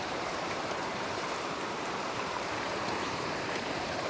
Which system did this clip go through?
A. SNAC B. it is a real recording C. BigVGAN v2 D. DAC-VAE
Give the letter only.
C